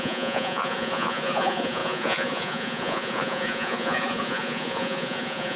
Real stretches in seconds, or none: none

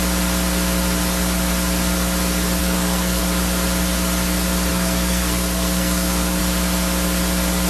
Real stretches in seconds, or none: 0.0-2.6; 3.2-4.7; 6.4-7.7

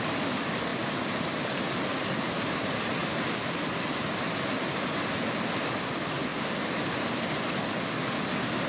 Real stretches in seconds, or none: 0.0-0.7; 1.7-3.0; 4.5-6.3; 7.1-8.7

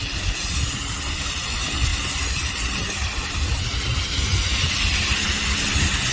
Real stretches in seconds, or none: 0.0-6.1